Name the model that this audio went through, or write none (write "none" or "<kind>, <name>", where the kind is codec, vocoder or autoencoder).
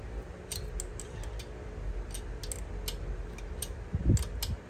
none